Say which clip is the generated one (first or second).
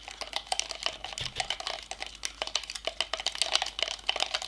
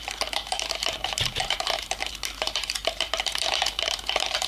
second